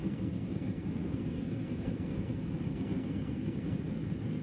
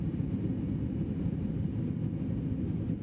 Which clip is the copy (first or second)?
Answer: first